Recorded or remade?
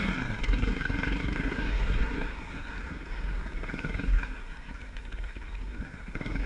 remade